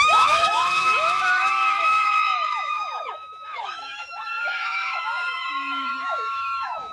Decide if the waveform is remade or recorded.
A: remade